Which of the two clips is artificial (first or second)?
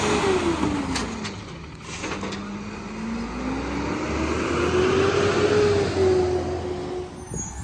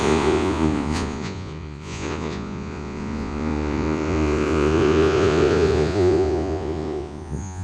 second